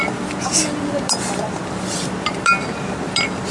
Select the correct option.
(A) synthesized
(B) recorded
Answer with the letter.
B